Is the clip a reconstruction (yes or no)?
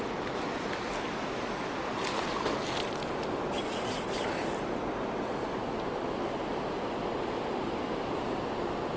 no